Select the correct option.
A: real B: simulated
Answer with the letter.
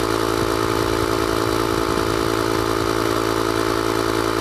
A